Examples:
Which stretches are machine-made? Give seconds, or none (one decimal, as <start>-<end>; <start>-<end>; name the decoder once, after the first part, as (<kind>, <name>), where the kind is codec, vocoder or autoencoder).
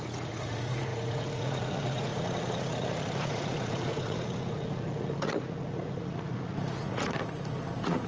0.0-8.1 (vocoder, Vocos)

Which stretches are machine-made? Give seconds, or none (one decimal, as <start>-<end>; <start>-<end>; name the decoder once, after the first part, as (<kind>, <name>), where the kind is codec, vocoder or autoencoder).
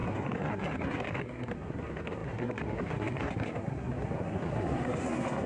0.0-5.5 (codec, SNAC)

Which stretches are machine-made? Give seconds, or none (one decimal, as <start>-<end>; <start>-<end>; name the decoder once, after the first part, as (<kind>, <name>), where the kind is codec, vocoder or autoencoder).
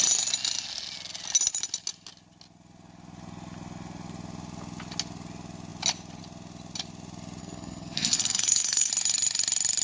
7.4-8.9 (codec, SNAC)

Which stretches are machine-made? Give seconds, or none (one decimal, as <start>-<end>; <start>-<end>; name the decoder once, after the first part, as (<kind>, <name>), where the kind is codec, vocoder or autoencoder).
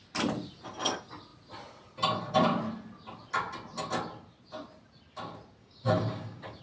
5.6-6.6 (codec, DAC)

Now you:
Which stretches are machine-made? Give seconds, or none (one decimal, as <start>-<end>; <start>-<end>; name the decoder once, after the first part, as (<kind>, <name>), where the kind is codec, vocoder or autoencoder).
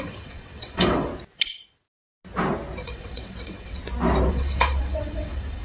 0.0-1.1 (vocoder, WaveNeXt); 2.8-3.8; 4.3-5.6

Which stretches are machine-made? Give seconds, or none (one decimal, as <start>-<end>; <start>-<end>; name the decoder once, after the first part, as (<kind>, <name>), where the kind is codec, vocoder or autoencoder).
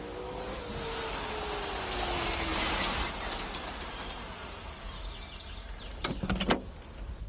2.5-4.0 (vocoder, BigVGAN v2)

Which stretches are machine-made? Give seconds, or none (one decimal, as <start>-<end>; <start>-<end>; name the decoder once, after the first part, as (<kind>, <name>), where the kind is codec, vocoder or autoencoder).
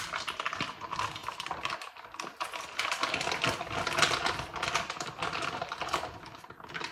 none